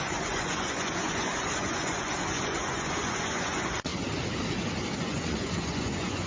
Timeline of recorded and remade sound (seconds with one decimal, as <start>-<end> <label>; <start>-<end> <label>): 0.0-3.9 remade; 3.9-5.0 recorded; 5.0-6.3 remade